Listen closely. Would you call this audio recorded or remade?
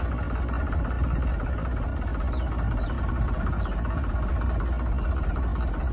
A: recorded